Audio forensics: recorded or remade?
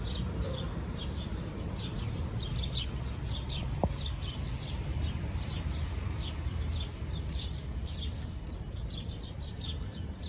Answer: remade